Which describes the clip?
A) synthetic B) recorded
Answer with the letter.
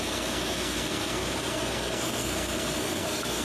A